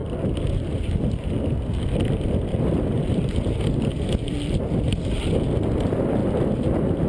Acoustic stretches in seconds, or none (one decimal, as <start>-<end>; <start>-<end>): 1.0-2.5; 4.6-6.2